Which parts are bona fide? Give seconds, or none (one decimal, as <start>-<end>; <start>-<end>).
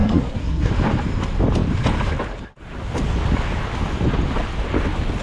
0.7-5.2